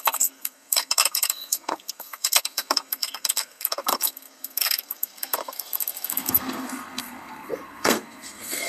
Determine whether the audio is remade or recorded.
remade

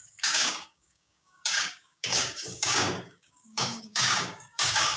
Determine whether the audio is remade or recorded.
remade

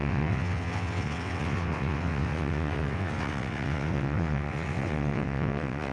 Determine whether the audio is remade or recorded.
remade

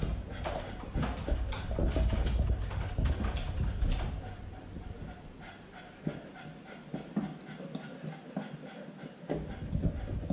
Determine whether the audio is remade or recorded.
recorded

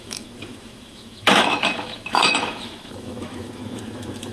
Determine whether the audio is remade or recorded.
remade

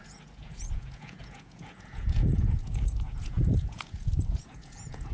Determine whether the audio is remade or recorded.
remade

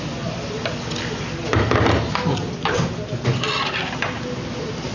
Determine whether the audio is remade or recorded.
recorded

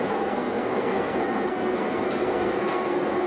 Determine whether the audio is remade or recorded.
remade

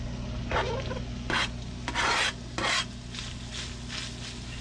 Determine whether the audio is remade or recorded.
recorded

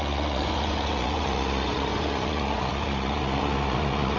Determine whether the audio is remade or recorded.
remade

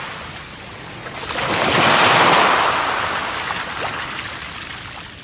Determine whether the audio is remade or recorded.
recorded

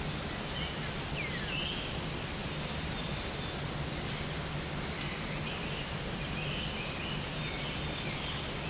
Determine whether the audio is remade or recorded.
recorded